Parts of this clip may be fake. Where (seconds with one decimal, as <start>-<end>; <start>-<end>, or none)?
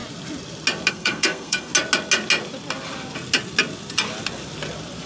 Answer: 0.9-1.7